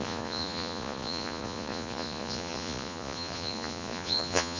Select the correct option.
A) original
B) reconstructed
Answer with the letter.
B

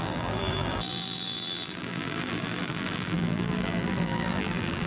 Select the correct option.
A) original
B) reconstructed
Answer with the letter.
B